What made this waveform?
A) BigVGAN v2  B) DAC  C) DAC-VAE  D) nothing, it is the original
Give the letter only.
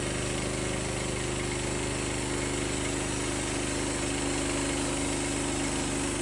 D